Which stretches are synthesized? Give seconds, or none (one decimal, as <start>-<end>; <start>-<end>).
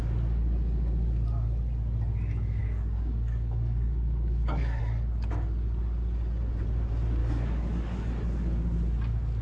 2.6-4.8; 7.2-8.1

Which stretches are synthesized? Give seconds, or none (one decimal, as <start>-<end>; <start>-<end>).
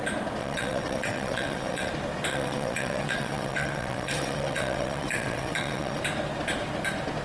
0.4-1.9; 2.3-6.0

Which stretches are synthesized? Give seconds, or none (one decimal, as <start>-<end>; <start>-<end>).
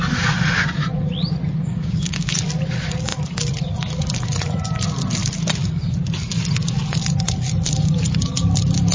1.6-2.4